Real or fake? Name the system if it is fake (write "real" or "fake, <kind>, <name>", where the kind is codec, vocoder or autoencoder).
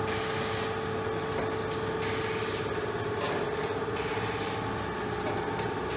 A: real